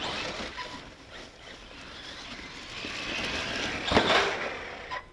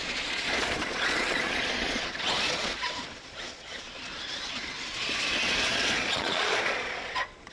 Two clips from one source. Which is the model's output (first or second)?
second